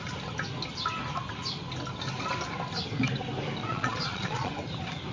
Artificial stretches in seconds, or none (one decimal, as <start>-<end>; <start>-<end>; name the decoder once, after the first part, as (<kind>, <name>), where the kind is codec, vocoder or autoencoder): 3.6-4.5 (vocoder, Vocos)